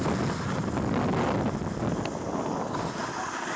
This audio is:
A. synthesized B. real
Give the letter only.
B